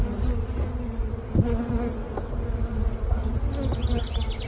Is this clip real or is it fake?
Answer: real